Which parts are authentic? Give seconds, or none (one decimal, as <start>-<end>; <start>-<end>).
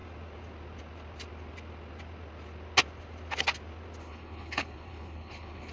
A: 0.0-4.0